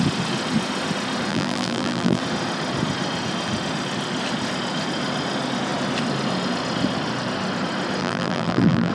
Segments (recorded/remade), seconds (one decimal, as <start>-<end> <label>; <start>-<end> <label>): 0.0-1.3 recorded; 1.3-2.2 remade; 2.2-8.0 recorded; 8.0-8.9 remade